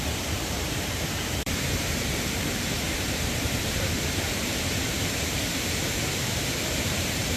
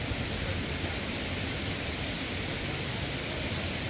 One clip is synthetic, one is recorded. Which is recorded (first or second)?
second